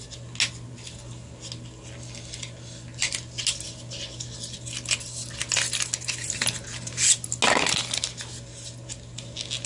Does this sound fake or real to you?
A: real